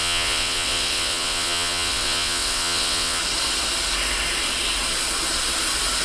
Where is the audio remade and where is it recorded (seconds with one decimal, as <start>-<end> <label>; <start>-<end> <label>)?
0.0-3.2 remade; 3.2-6.0 recorded